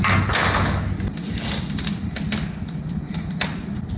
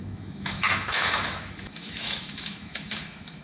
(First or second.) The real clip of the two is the first